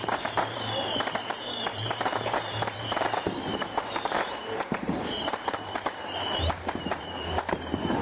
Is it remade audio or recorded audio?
remade